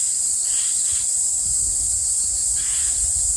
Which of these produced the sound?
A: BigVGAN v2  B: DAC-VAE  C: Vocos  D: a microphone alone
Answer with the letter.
D